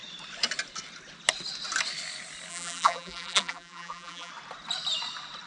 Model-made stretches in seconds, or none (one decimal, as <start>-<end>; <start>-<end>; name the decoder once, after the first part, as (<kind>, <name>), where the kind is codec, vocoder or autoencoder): 2.5-4.3 (vocoder, BigVGAN v2)